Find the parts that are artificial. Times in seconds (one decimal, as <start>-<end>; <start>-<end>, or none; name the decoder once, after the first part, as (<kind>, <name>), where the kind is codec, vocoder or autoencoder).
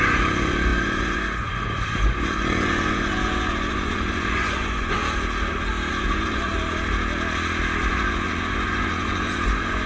0.0-5.0 (vocoder, Vocos); 5.9-6.5; 7.9-9.9